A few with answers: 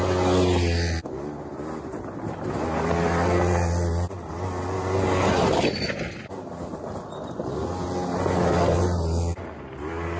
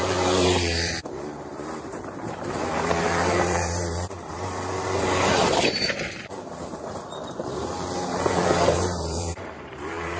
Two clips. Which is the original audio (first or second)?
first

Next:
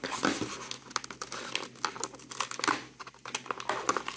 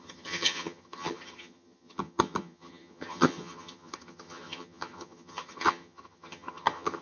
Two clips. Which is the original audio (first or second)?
first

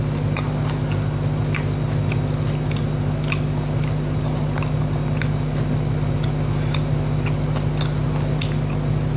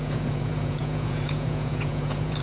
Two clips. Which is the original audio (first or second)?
first